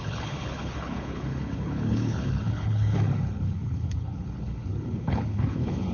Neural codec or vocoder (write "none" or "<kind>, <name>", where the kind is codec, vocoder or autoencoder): codec, HILCodec